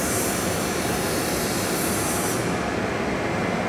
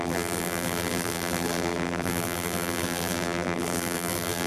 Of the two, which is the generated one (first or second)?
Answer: second